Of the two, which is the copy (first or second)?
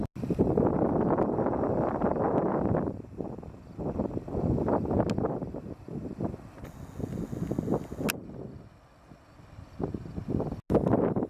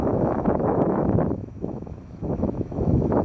second